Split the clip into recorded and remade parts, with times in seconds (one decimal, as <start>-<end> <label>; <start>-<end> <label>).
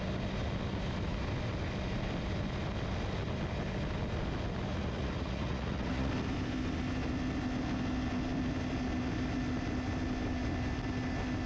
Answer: 0.0-4.7 recorded; 4.7-6.1 remade; 6.1-11.5 recorded